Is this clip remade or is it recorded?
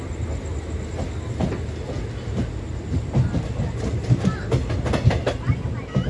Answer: recorded